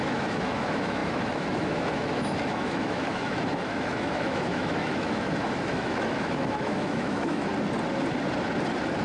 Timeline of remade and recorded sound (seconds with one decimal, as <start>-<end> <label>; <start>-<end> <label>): 0.0-7.5 remade; 7.5-9.0 recorded